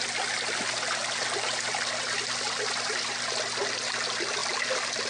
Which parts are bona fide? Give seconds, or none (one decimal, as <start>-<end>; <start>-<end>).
0.0-4.4